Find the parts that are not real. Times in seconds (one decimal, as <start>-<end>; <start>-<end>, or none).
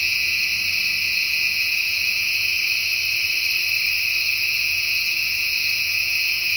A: 0.0-0.5; 1.0-2.5; 4.2-6.6